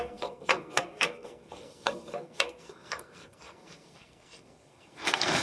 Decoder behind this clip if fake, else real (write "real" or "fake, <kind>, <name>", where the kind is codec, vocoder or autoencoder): fake, codec, SNAC